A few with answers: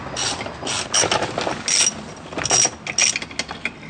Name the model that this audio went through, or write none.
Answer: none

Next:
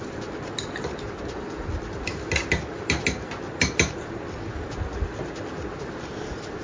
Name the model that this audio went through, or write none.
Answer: none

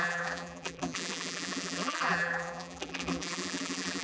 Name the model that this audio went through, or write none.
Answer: vocoder, BigVGAN v2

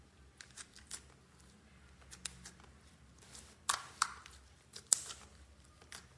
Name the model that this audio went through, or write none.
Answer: none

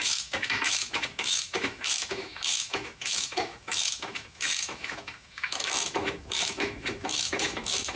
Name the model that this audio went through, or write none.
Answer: autoencoder, DAC-VAE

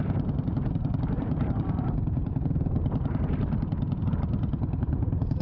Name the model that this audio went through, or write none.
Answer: vocoder, BigVGAN v2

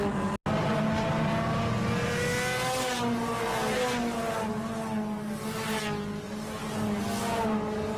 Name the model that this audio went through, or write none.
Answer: none